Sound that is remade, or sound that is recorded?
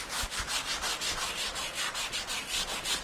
recorded